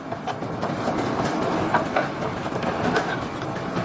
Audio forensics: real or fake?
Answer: real